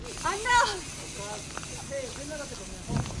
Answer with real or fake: real